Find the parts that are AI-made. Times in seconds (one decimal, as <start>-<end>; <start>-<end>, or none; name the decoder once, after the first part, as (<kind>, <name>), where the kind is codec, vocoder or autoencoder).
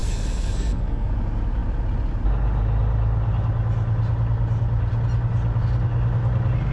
0.0-1.1 (codec, SNAC)